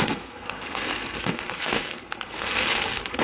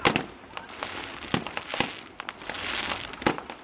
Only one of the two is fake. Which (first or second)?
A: first